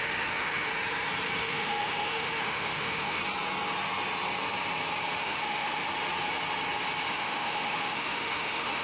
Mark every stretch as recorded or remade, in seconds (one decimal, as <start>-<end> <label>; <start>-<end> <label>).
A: 0.0-0.7 remade; 0.7-1.4 recorded; 1.4-3.2 remade; 3.2-5.2 recorded; 5.2-5.9 remade; 5.9-7.1 recorded; 7.1-8.8 remade

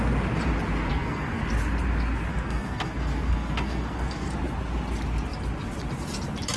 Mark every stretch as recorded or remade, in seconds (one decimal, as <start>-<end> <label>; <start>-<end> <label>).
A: 0.0-0.9 recorded; 0.9-1.4 remade; 1.4-2.3 recorded; 2.3-4.3 remade; 4.3-6.6 recorded

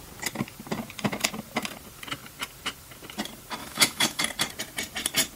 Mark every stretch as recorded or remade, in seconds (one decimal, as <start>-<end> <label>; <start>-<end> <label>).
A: 0.0-3.6 recorded; 3.6-4.2 remade; 4.2-5.4 recorded

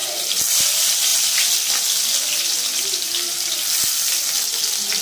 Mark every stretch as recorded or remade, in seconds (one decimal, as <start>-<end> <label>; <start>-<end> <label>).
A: 0.0-5.0 recorded

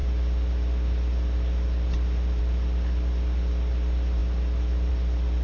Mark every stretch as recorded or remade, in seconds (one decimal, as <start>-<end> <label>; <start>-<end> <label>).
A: 0.0-5.4 recorded

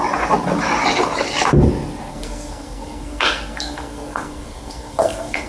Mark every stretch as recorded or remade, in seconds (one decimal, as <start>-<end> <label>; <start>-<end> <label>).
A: 0.0-2.1 recorded; 2.1-5.5 remade